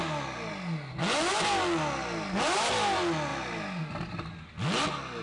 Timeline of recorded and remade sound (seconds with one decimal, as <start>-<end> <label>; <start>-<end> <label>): 0.0-5.2 recorded